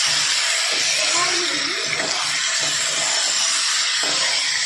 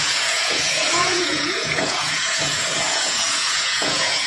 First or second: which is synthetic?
second